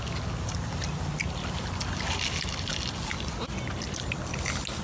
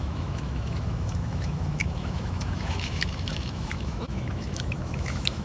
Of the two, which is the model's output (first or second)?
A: second